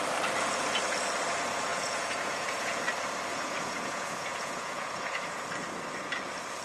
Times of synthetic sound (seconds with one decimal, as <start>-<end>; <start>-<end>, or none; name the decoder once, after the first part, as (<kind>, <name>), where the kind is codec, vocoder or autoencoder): 1.7-2.8 (vocoder, Vocos); 3.3-5.3